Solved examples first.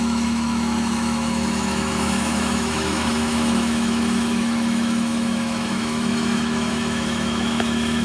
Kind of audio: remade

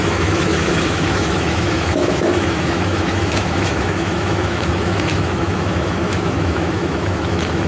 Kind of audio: remade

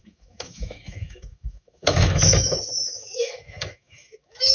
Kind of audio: remade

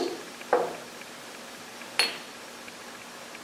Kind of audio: recorded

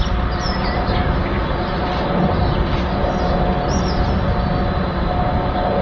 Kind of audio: recorded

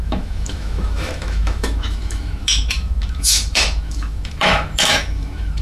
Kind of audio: remade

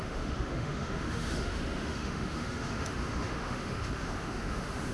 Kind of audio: remade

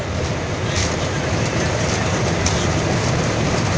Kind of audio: recorded